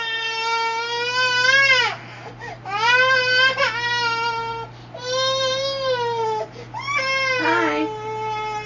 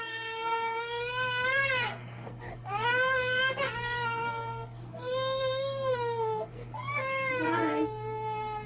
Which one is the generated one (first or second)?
second